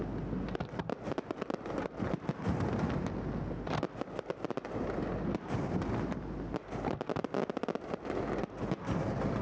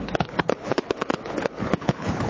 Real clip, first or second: first